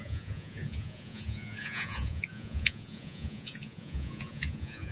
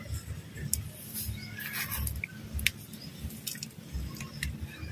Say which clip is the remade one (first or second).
first